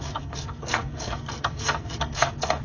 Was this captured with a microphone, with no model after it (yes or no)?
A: no